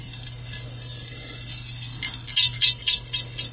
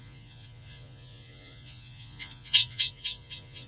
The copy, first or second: second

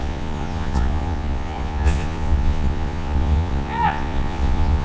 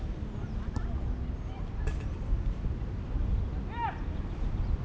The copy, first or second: first